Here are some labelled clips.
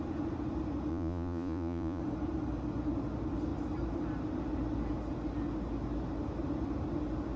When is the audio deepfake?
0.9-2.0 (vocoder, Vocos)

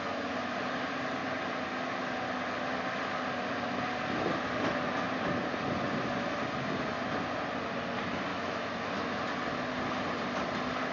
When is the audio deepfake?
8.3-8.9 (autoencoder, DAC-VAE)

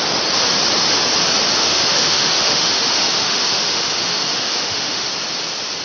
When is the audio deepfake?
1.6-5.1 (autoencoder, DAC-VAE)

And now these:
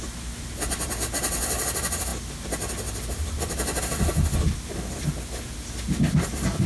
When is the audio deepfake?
none

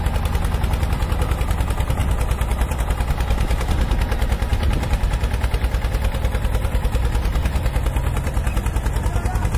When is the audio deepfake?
2.0-2.8 (vocoder, BigVGAN v2); 4.5-8.6

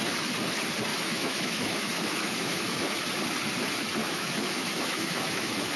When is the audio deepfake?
0.9-3.0 (autoencoder, DAC-VAE); 4.0-5.8

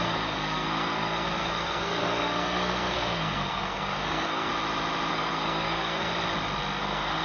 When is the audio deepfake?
0.0-4.5 (codec, SNAC); 5.1-6.1; 6.8-7.2